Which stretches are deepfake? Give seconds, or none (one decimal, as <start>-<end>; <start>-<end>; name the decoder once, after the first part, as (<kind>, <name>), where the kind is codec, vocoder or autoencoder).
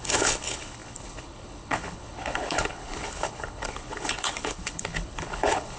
0.0-5.8 (codec, HILCodec)